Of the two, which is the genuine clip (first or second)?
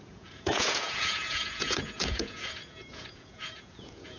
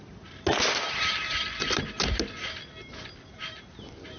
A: second